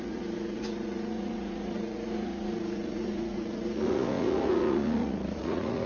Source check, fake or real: fake